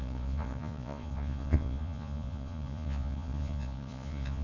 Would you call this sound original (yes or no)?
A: no